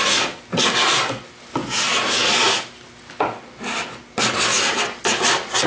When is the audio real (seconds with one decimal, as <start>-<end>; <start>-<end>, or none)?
0.0-5.7

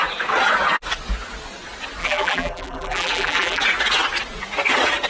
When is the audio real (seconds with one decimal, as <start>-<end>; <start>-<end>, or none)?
0.0-2.0; 3.6-5.1

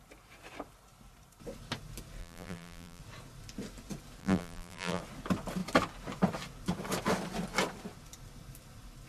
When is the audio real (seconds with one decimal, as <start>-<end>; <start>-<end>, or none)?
0.0-2.2; 3.0-4.2; 5.0-9.1

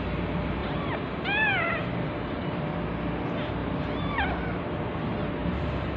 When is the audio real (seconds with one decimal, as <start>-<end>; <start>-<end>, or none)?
0.0-0.6; 2.5-3.6; 4.1-5.4

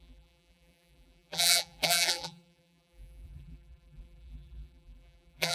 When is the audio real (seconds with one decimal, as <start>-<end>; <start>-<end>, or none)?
none